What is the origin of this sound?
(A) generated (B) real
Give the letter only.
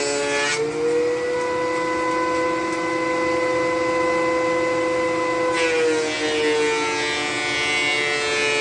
B